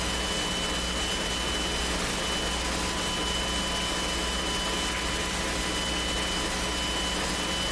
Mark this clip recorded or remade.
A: recorded